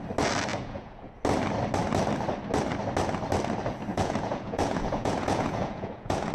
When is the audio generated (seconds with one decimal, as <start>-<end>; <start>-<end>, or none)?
0.5-1.1; 3.9-6.3